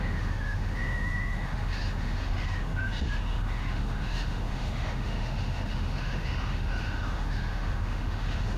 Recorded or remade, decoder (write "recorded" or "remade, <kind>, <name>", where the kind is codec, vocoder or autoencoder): remade, autoencoder, DAC-VAE